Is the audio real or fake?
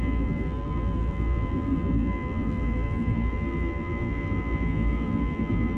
fake